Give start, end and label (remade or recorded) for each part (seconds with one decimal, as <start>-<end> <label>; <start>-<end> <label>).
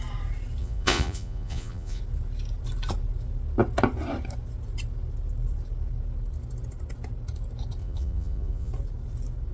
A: 0.0-0.6 recorded; 0.6-2.0 remade; 2.0-7.8 recorded; 7.8-8.7 remade; 8.7-9.5 recorded